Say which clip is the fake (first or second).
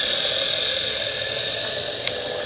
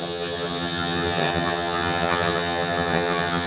second